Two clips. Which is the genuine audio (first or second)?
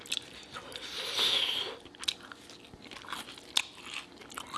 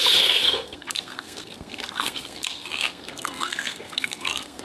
first